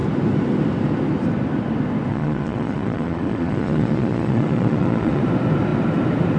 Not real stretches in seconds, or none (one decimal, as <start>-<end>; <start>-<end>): 2.1-5.2